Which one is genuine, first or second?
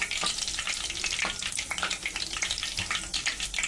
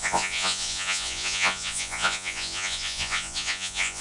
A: first